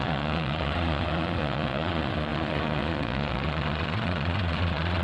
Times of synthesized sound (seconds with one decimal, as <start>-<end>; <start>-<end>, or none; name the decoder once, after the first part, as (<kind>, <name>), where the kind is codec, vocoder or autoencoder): 0.0-5.0 (vocoder, Vocos)